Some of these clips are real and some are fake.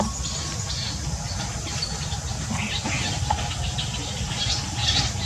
real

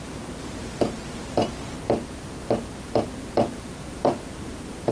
fake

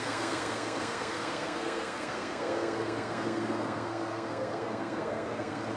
fake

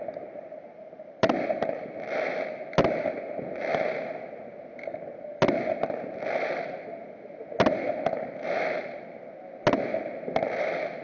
real